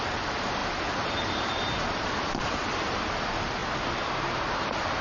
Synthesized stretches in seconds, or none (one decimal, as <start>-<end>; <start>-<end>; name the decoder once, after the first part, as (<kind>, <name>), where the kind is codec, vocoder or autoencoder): 0.0-3.6 (vocoder, BigVGAN v2); 4.5-5.0